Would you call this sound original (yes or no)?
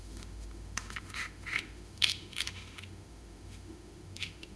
no